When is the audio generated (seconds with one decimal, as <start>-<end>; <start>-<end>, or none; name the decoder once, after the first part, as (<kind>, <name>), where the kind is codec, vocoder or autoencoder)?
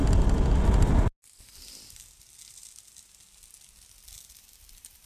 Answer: none